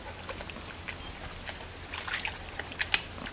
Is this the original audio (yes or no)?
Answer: yes